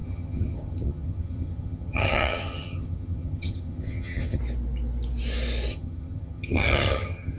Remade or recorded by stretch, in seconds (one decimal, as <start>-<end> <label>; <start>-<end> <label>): 0.0-4.4 remade; 4.4-5.7 recorded; 5.7-7.4 remade